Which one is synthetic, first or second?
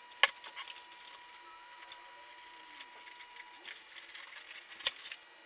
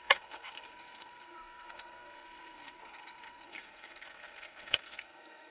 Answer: second